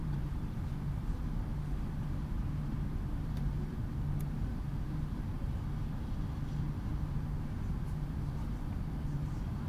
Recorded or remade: remade